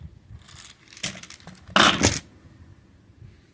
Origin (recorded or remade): recorded